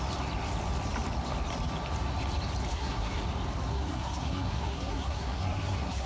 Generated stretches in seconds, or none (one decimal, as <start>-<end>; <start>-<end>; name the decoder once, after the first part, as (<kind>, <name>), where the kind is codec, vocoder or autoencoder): 2.7-3.2 (codec, SNAC); 3.7-6.1